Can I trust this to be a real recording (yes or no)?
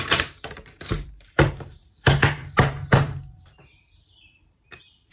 no